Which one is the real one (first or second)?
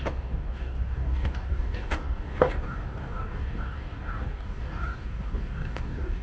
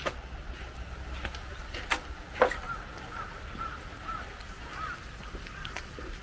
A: second